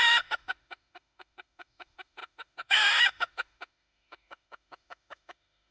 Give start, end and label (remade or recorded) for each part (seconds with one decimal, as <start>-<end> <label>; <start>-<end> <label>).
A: 0.0-5.7 remade